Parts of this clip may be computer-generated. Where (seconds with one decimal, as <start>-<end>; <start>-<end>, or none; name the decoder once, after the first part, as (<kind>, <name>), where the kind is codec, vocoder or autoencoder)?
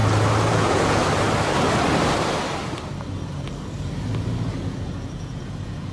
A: 0.5-1.0 (vocoder, Vocos); 4.5-5.9